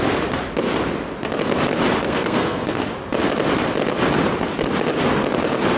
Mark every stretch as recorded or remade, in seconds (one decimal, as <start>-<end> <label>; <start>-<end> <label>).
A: 0.0-2.0 recorded; 2.0-2.8 remade; 2.8-5.8 recorded